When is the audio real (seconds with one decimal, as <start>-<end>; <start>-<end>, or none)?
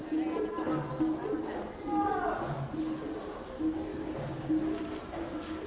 0.0-3.9; 4.6-5.7